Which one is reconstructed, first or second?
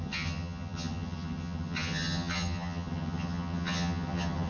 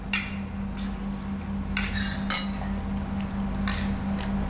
first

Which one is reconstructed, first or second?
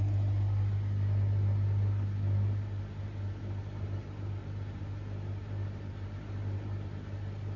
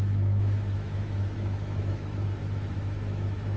second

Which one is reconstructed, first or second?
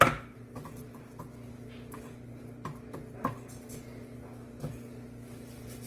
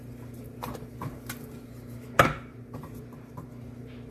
second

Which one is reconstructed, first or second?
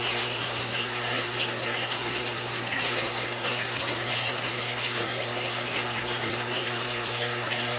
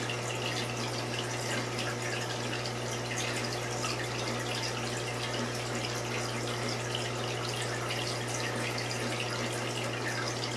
first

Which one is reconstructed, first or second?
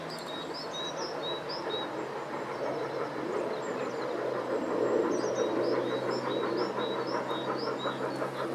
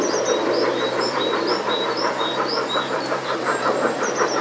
second